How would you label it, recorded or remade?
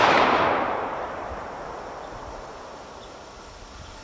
recorded